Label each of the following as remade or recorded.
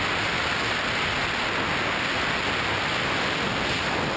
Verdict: recorded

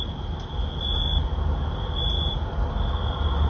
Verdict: recorded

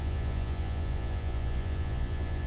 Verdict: remade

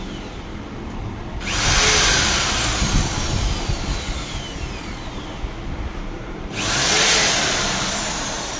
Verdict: recorded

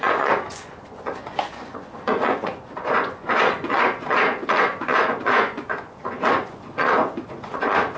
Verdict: remade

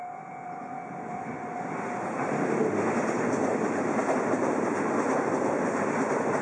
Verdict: recorded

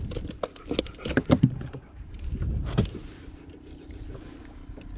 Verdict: recorded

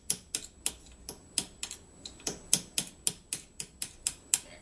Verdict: recorded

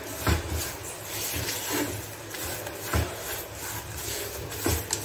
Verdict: recorded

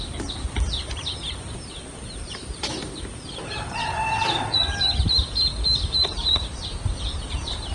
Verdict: remade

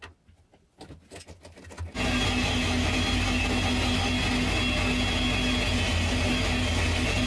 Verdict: recorded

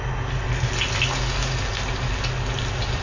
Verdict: recorded